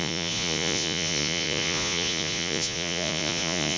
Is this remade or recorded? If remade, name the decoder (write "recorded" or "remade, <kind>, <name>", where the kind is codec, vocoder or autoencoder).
remade, vocoder, Vocos